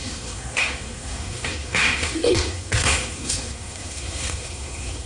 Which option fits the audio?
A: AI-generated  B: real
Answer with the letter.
A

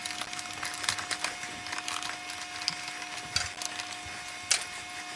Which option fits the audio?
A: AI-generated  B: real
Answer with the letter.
B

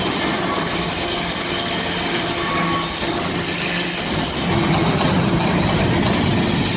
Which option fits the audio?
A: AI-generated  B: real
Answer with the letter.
B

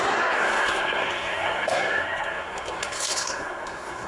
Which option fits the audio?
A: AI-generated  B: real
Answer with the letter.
A